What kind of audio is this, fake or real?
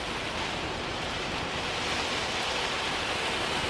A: real